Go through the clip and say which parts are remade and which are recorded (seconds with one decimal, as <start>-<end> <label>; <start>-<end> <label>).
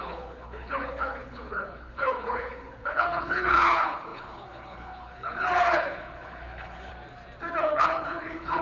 0.0-6.9 remade; 6.9-7.6 recorded; 7.6-8.6 remade